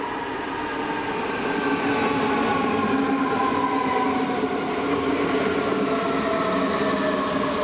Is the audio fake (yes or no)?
no